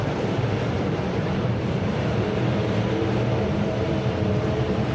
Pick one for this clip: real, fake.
fake